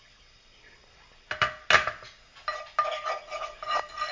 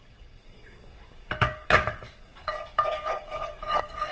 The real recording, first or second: first